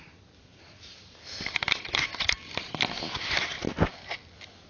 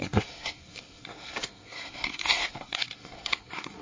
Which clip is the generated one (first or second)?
second